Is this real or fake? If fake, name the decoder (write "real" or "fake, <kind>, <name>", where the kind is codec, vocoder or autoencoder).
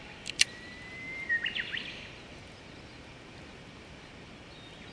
real